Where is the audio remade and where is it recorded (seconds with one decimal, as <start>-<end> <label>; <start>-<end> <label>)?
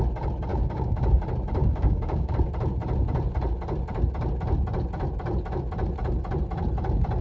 0.0-0.5 recorded; 0.5-1.2 remade; 1.2-1.6 recorded; 1.6-2.3 remade; 2.3-7.2 recorded